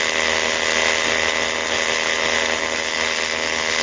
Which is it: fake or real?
real